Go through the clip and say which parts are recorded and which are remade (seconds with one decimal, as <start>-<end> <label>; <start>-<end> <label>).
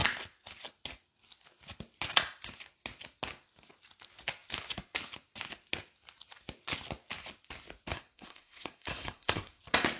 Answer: 0.0-7.9 recorded; 7.9-9.6 remade; 9.6-10.0 recorded